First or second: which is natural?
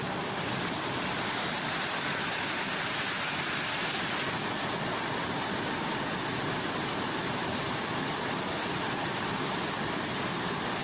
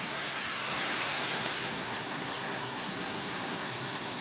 first